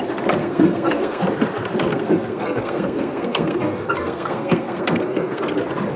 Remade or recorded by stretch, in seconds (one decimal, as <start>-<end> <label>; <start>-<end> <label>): 0.0-0.4 recorded; 0.4-1.2 remade; 1.2-1.9 recorded; 1.9-5.5 remade; 5.5-6.0 recorded